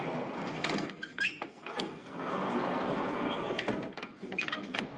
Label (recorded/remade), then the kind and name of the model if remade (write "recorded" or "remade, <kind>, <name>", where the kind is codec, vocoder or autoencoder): remade, codec, SNAC